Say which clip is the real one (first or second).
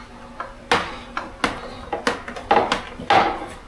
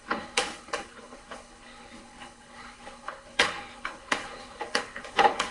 first